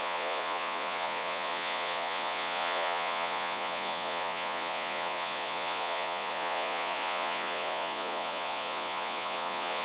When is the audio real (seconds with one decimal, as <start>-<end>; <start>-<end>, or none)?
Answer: none